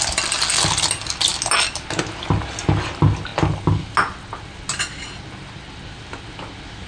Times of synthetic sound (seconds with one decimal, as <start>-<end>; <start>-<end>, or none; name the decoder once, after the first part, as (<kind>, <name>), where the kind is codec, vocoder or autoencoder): none